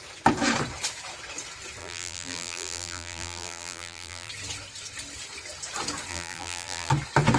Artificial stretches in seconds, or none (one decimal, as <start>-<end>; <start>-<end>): 1.8-4.3; 6.1-6.9